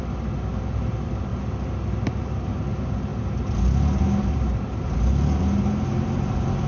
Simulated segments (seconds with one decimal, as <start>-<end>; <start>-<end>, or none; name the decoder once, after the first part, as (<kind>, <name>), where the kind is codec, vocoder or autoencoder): none